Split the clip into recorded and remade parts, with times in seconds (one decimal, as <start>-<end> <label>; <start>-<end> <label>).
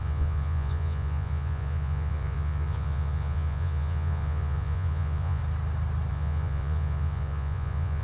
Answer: 0.0-5.4 remade; 5.4-6.1 recorded; 6.1-8.0 remade